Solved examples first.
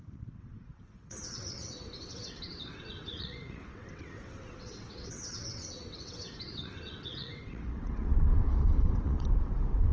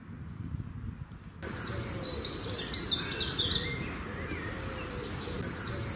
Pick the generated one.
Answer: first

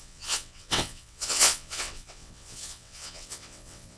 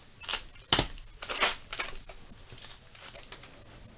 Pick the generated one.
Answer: first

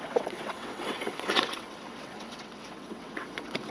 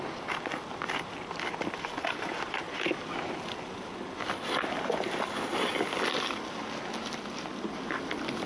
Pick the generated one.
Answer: first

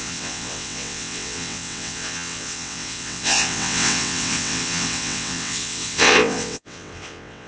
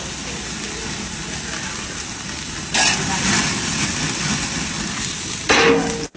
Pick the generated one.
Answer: first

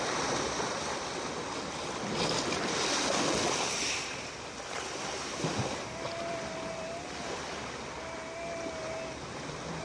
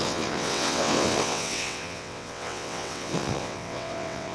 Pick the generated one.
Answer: second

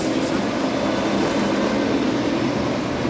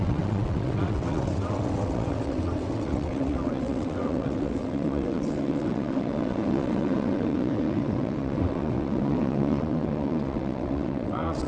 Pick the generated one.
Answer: second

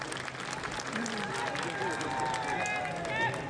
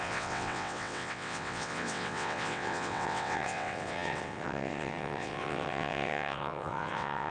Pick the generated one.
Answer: second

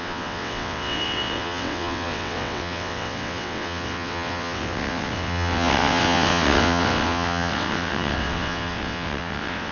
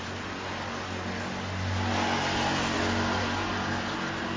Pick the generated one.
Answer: first